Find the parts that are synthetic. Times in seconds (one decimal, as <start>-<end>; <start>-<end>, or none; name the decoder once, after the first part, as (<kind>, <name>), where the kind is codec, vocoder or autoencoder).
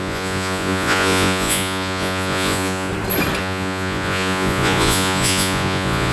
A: 0.0-2.9 (vocoder, Vocos); 3.4-6.1